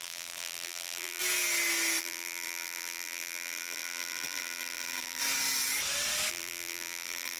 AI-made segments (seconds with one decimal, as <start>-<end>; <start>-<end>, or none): 0.0-1.2; 2.0-5.2; 6.3-7.4